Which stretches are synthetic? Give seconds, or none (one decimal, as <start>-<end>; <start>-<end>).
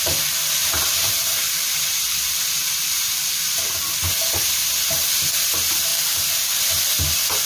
0.6-3.5